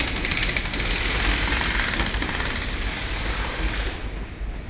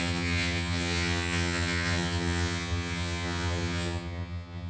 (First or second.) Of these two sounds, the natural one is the first